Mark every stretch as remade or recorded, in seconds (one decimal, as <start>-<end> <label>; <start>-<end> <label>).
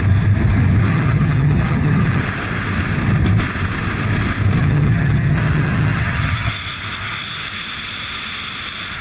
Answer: 0.0-0.9 recorded; 0.9-2.2 remade; 2.2-4.6 recorded; 4.6-6.5 remade; 6.5-9.0 recorded